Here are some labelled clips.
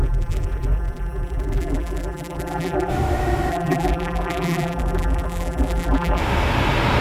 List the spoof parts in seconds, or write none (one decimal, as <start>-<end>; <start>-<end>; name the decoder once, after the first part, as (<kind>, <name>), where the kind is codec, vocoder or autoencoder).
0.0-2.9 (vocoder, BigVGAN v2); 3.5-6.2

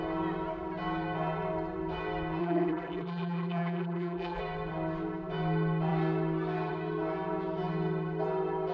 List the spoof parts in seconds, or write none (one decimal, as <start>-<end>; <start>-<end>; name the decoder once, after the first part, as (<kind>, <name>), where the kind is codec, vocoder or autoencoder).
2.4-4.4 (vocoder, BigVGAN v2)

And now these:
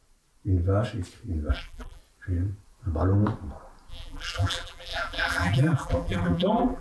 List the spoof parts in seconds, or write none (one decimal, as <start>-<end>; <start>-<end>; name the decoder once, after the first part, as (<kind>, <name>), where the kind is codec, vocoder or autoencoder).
1.5-2.0 (vocoder, BigVGAN v2); 3.9-6.8